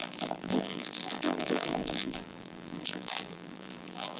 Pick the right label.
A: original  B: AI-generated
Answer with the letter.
B